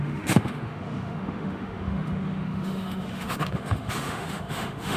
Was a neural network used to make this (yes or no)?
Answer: yes